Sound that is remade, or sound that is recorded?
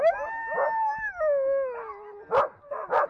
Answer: recorded